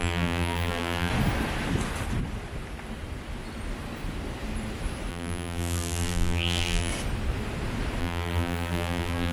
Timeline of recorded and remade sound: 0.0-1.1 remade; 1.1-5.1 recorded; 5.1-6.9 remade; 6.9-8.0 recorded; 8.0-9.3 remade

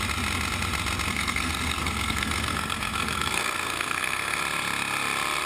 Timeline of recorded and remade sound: 0.0-1.1 recorded; 1.1-4.4 remade; 4.4-5.5 recorded

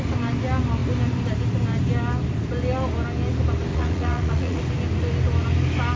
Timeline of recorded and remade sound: 0.0-3.7 recorded; 3.7-4.6 remade; 4.6-6.0 recorded

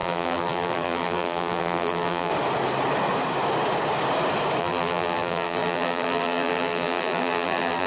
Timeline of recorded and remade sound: 0.0-2.3 remade; 2.3-4.6 recorded; 4.6-7.9 remade

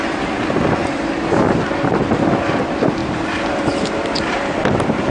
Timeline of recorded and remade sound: 0.0-3.0 recorded; 3.0-4.4 remade; 4.4-5.1 recorded

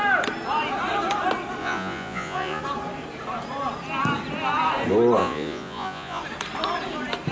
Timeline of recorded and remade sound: 0.0-1.6 recorded; 1.6-2.6 remade; 2.6-5.2 recorded; 5.2-6.2 remade; 6.2-7.3 recorded